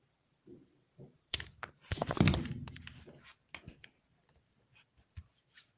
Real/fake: fake